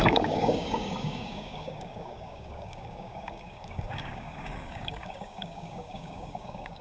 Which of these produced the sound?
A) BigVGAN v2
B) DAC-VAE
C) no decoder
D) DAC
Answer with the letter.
D